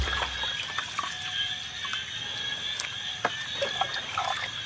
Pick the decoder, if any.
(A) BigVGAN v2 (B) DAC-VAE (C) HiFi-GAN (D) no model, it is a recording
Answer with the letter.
A